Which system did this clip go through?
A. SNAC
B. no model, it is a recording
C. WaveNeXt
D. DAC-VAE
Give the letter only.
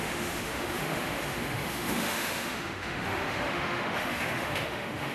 D